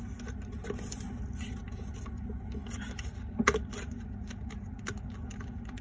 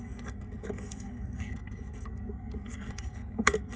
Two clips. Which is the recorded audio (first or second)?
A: first